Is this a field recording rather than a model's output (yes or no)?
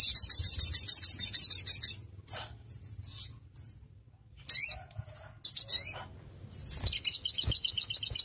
yes